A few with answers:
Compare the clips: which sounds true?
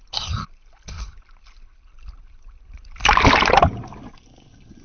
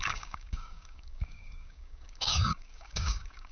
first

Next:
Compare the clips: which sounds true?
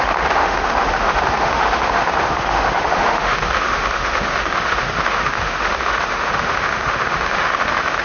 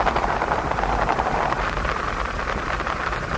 second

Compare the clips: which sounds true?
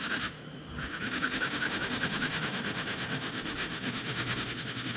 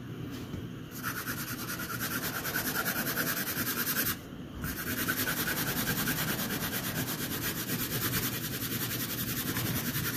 second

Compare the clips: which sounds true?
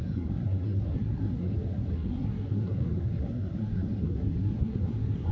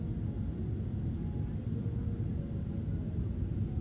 second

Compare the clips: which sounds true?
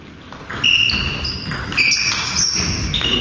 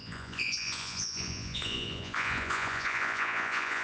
first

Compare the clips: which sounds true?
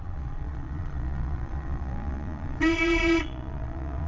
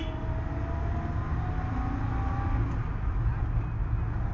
second